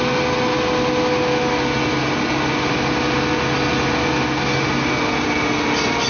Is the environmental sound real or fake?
real